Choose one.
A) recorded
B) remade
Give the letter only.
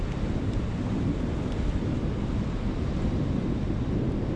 A